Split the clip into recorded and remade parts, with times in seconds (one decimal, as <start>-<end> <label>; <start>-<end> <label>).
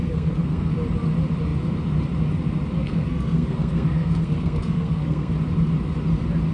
0.0-0.7 remade; 0.7-2.8 recorded; 2.8-5.3 remade; 5.3-6.5 recorded